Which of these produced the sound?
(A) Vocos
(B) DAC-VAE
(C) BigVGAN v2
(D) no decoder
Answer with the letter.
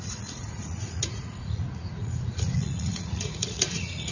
A